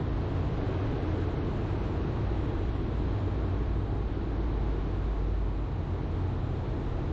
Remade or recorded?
recorded